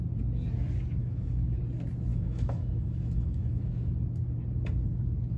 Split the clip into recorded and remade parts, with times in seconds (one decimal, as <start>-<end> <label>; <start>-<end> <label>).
0.0-1.0 recorded; 1.0-1.6 remade; 1.6-2.1 recorded; 2.1-3.7 remade; 3.7-5.4 recorded